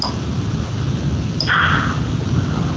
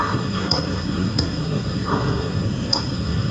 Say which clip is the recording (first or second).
first